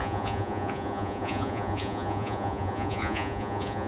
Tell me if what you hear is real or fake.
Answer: fake